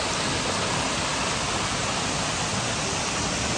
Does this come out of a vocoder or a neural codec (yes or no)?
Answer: no